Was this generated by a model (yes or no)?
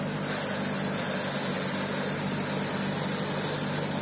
no